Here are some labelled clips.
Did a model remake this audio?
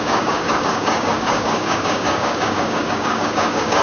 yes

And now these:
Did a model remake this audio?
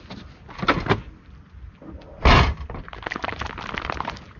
no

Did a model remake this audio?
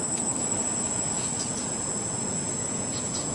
yes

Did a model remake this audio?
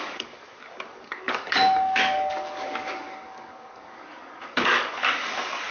yes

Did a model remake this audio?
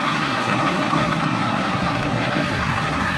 yes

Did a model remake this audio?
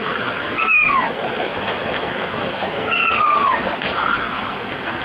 yes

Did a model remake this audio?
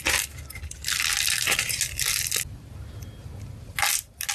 no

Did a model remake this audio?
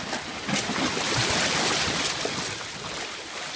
no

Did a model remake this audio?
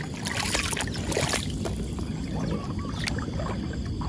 no